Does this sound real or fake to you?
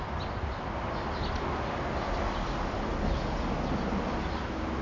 real